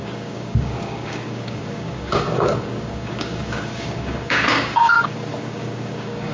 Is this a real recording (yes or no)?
no